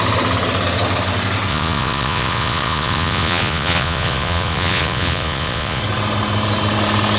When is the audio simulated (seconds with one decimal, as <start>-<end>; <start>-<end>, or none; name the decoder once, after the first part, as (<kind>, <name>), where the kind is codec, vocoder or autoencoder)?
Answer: 1.5-5.8 (vocoder, Vocos)